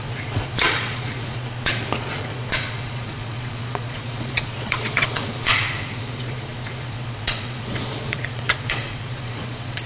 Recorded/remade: remade